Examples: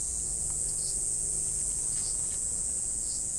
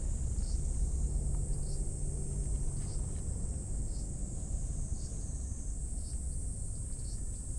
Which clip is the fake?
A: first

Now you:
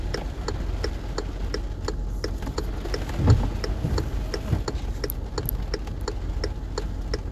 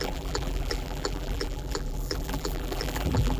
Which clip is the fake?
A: second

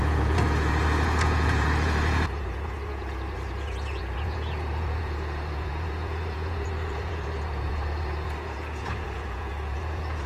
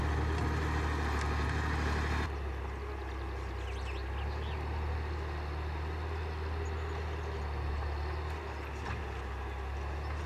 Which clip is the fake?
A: first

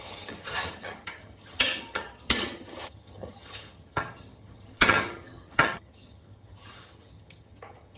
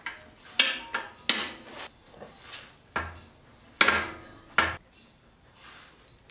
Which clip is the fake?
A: first